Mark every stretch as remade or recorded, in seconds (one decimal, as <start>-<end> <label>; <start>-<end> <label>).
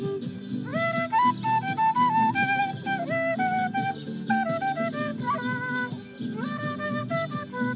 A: 0.0-7.8 recorded